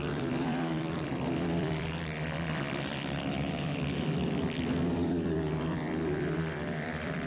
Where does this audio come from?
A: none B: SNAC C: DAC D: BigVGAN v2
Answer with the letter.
D